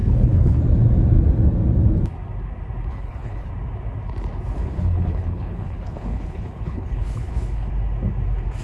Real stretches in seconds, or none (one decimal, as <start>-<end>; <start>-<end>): 0.6-2.9; 3.5-4.6; 7.7-8.6